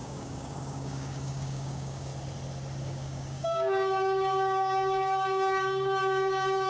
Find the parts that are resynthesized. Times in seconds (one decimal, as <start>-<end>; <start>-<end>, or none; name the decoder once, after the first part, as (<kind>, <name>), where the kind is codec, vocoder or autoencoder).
0.0-2.1 (codec, DAC); 2.8-6.7